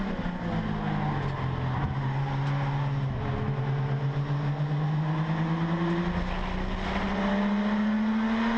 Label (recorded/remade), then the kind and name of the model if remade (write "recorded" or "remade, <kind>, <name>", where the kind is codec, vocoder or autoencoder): recorded